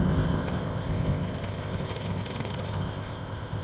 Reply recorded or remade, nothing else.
remade